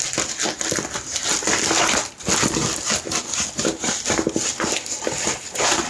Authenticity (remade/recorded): recorded